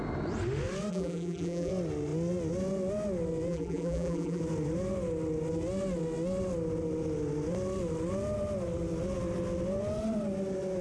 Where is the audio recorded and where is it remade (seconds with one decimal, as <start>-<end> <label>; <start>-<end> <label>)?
0.0-0.9 recorded; 0.9-1.7 remade; 1.7-3.5 recorded; 3.5-4.4 remade; 4.4-10.8 recorded